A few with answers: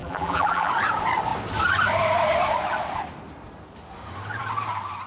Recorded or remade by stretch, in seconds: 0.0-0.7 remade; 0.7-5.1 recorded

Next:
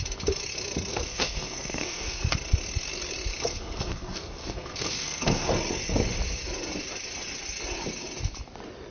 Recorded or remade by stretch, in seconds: 0.0-0.9 recorded; 0.9-2.2 remade; 2.2-3.3 recorded; 3.3-5.5 remade; 5.5-8.9 recorded

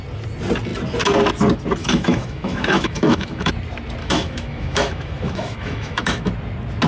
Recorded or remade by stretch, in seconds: 0.0-1.8 recorded; 1.8-3.5 remade; 3.5-4.0 recorded; 4.0-6.3 remade; 6.3-6.9 recorded

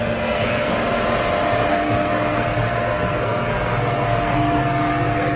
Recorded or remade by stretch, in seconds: 0.0-0.7 remade; 0.7-1.7 recorded; 1.7-5.4 remade

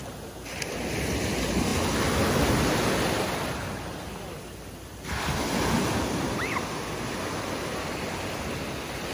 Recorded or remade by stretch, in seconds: 0.0-9.1 recorded

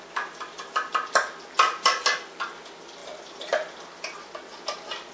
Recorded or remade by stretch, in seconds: 0.0-5.1 recorded

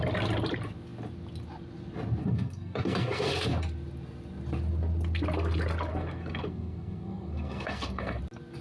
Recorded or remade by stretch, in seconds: 0.0-2.2 recorded; 2.2-3.3 remade; 3.3-5.9 recorded; 5.9-8.2 remade; 8.2-8.6 recorded